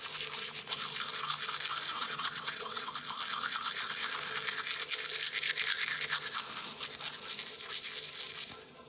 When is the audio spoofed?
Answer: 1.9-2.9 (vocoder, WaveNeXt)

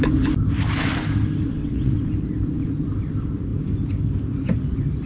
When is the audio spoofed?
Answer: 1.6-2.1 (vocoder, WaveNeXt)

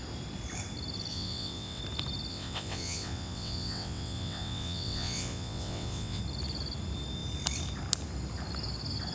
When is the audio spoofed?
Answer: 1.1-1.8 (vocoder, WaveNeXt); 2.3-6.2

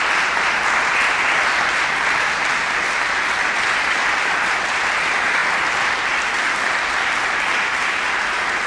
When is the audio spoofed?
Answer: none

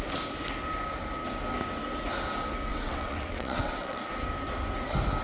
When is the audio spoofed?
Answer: 2.7-4.1 (vocoder, WaveNeXt)

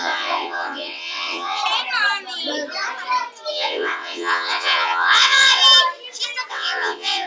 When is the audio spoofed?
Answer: 0.0-1.6 (vocoder, WaveNeXt); 3.5-5.6; 6.5-7.3

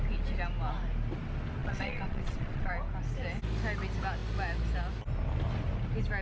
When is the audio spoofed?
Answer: 1.6-2.7 (vocoder, WaveNeXt)